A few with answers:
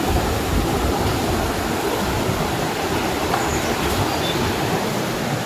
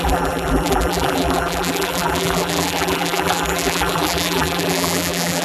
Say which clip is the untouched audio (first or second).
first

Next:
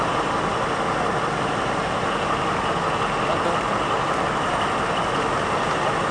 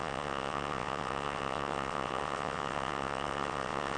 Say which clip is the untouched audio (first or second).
first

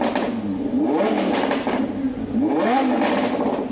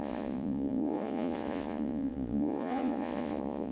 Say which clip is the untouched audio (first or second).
first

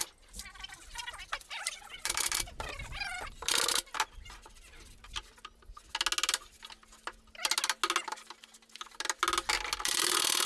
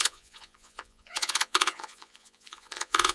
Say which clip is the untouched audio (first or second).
first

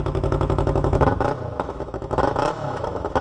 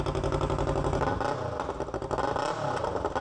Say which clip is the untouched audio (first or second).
second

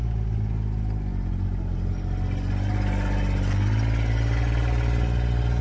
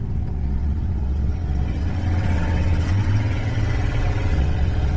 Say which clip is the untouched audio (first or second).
first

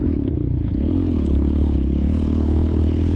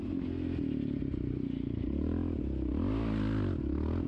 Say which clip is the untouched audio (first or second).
second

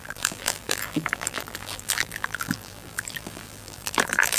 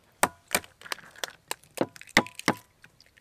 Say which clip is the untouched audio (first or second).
second